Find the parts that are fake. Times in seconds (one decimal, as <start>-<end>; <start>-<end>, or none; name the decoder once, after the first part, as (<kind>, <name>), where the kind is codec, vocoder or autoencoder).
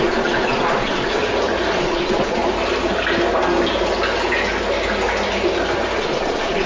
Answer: 0.0-1.2 (vocoder, Vocos); 1.8-2.4; 6.0-6.7